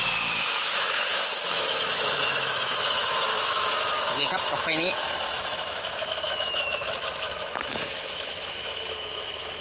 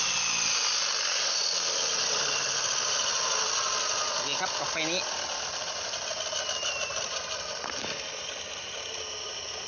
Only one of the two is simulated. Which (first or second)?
first